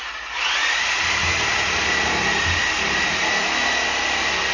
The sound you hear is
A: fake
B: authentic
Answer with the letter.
B